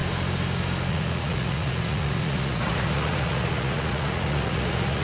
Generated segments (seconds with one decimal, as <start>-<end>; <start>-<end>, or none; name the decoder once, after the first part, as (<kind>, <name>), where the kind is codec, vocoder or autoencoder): 0.9-5.0 (vocoder, Vocos)